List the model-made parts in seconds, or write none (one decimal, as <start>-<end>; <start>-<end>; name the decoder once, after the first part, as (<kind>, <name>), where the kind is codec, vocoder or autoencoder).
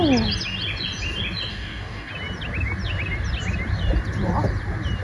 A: 1.5-2.1 (codec, DAC)